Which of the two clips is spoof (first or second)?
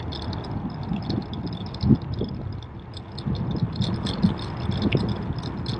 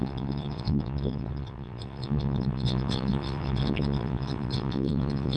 second